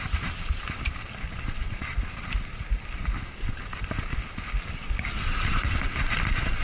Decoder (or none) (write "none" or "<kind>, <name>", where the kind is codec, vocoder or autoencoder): none